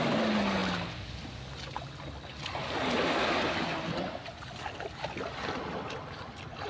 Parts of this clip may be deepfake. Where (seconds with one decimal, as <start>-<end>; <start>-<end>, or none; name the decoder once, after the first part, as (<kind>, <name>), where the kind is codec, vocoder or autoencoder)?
none